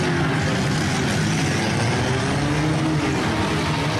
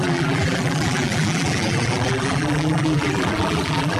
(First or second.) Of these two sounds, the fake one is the second